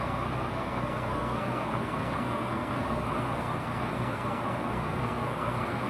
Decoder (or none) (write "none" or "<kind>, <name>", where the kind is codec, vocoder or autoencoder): codec, SNAC